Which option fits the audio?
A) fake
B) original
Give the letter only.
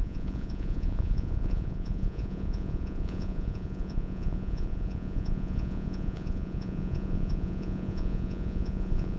A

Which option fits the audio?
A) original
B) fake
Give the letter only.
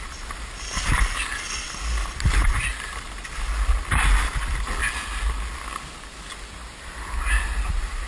A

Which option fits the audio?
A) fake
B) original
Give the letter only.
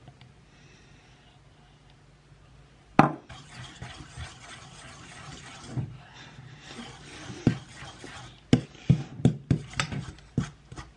B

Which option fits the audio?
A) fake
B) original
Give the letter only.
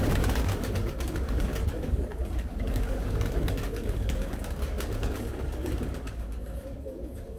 A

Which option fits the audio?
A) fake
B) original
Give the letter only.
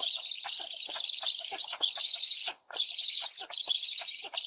B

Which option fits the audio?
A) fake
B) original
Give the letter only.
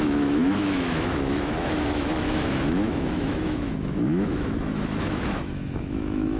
A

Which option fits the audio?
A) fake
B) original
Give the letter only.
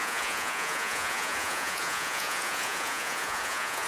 A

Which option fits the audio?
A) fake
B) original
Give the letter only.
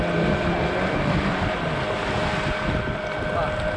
B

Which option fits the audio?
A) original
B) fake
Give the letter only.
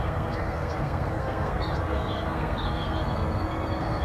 B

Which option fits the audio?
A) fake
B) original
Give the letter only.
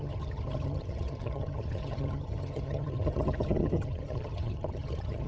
A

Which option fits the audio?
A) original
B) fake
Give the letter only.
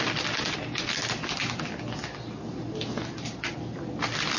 A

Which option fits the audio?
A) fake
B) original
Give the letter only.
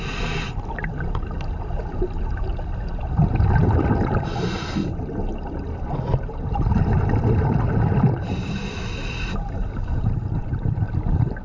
B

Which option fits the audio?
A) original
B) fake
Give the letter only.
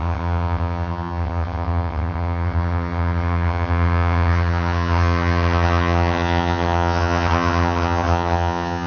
B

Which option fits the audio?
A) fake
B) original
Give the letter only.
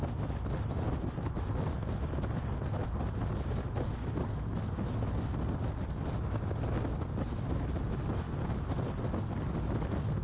B